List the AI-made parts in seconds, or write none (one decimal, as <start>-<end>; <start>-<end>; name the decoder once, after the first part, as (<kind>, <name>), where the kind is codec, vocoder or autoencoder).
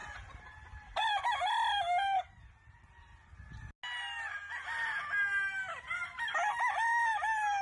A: none